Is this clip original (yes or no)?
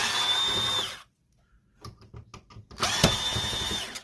yes